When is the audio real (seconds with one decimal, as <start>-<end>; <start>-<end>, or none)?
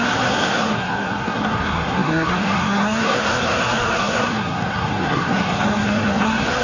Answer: none